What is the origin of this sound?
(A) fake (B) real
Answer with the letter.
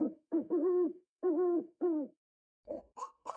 A